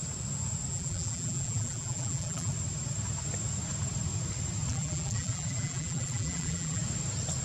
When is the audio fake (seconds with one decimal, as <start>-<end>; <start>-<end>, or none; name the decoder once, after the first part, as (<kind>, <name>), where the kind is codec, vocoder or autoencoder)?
0.7-2.5 (vocoder, BigVGAN v2); 4.7-6.8